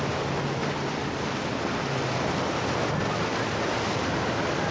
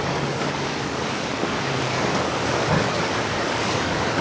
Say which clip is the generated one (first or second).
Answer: second